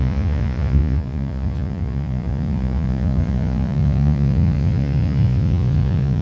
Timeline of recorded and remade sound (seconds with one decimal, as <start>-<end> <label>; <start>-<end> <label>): 0.0-6.2 remade